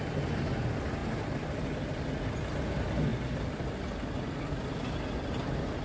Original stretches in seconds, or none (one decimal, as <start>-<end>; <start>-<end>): 0.0-5.8